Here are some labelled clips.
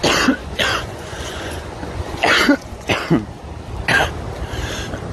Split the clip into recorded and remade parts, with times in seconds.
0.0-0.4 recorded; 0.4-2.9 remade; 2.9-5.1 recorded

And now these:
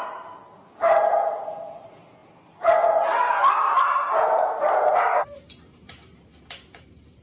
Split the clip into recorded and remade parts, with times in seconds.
0.0-7.2 recorded